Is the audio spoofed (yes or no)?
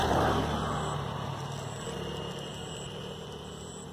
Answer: no